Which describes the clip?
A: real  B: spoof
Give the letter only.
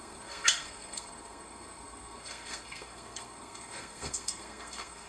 B